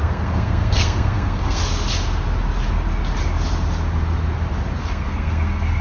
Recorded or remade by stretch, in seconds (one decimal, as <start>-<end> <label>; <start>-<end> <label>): 0.0-1.6 remade; 1.6-4.8 recorded; 4.8-5.8 remade